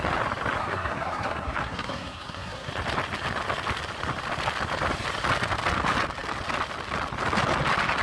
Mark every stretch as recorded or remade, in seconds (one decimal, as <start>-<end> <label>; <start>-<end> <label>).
0.0-0.6 recorded; 0.6-2.7 remade; 2.7-8.0 recorded